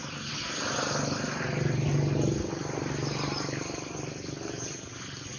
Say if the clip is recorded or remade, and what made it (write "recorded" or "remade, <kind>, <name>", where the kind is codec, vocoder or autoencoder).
recorded